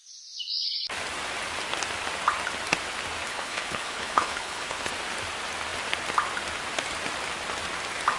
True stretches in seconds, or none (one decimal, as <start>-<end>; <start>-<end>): 0.0-3.3; 4.9-8.2